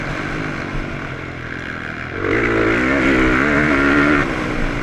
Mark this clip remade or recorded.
recorded